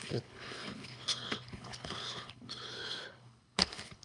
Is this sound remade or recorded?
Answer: remade